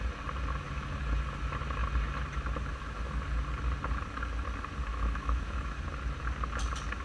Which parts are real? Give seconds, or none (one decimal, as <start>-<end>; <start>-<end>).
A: 0.0-4.9; 5.8-7.0

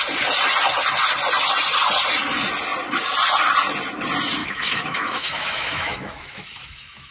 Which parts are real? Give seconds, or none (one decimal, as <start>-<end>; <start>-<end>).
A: 0.0-4.4

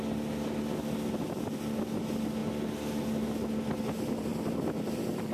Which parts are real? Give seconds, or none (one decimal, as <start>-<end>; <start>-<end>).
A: 0.0-5.3

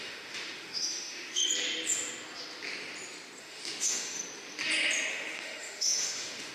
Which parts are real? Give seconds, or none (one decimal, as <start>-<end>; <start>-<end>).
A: 1.4-3.4; 4.2-5.1